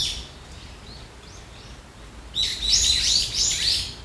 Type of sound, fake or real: real